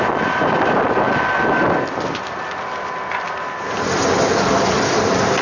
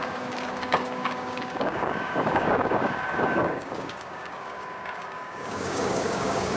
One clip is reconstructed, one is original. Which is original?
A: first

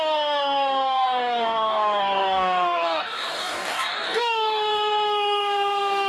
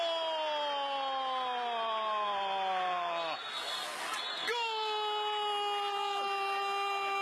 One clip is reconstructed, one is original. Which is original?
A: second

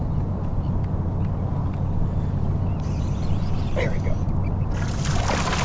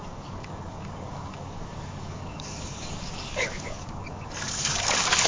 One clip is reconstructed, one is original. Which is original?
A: first